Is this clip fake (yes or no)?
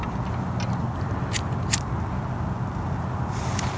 no